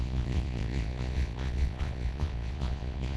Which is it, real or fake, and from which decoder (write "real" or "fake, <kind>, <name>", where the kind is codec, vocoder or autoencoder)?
fake, vocoder, Vocos